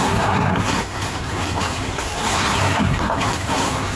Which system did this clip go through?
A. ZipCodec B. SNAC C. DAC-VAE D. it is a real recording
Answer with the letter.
B